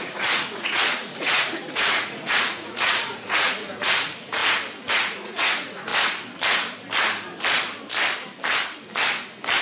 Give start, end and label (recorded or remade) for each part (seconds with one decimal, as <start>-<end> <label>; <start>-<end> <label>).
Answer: 0.0-4.4 remade; 4.4-4.9 recorded; 4.9-5.9 remade; 5.9-9.6 recorded